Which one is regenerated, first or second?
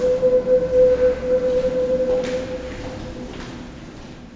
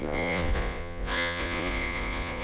second